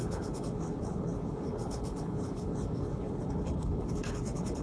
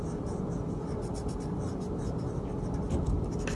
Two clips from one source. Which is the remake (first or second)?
first